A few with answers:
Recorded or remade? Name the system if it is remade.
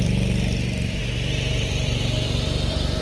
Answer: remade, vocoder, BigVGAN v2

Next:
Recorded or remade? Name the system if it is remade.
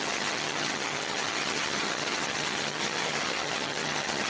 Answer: remade, vocoder, HiFi-GAN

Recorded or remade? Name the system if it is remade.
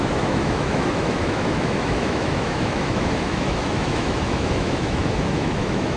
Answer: remade, autoencoder, DAC-VAE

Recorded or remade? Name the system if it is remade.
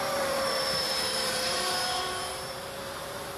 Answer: remade, vocoder, BigVGAN v2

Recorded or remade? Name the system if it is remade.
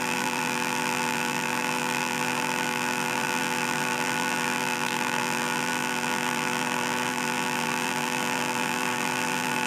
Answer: remade, vocoder, BigVGAN v2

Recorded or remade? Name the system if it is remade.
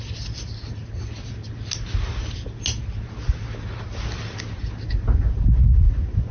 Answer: recorded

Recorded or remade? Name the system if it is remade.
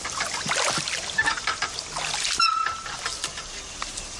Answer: recorded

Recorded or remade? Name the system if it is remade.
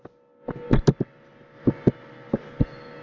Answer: recorded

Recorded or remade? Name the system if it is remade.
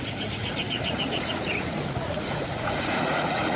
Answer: remade, vocoder, Vocos